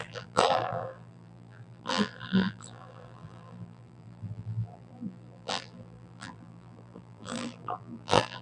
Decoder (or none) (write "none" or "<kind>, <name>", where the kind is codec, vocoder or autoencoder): vocoder, BigVGAN v2